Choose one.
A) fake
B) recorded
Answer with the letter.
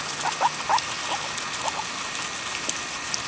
B